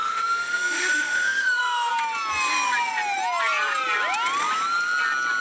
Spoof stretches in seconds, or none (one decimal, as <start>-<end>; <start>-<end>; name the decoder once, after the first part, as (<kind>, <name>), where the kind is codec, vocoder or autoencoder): 0.0-1.9 (autoencoder, DAC-VAE)